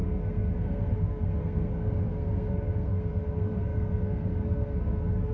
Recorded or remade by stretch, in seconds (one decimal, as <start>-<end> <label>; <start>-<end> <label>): 0.0-5.3 remade